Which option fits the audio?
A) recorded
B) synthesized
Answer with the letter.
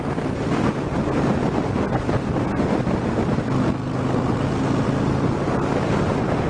A